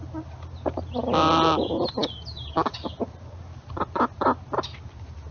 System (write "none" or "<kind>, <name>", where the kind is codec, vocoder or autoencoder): none